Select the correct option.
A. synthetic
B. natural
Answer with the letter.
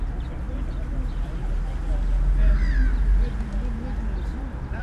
B